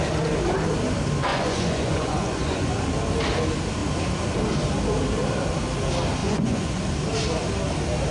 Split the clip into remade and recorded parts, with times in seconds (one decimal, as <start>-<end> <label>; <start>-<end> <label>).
0.0-1.3 recorded; 1.3-2.7 remade; 2.7-6.2 recorded; 6.2-6.8 remade; 6.8-8.1 recorded

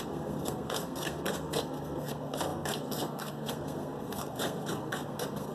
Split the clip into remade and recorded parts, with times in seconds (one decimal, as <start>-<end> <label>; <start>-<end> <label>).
0.0-5.5 remade

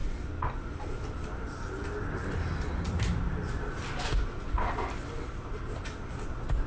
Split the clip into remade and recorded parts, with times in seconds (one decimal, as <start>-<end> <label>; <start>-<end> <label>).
0.0-6.7 recorded

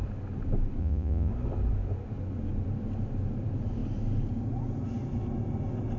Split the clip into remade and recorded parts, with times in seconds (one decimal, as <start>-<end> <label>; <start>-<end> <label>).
0.0-0.8 recorded; 0.8-1.3 remade; 1.3-6.0 recorded

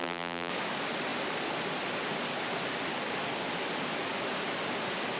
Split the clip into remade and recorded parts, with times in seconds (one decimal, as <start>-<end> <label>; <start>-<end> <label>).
0.0-0.5 remade; 0.5-5.2 recorded

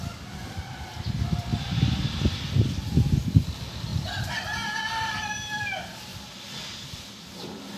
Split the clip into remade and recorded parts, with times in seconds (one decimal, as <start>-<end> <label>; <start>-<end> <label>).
0.0-3.9 remade; 3.9-4.9 recorded; 4.9-6.1 remade; 6.1-6.6 recorded; 6.6-7.8 remade